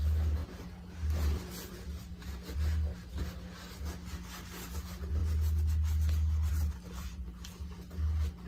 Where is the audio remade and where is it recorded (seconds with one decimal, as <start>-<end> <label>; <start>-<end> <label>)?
0.0-8.5 recorded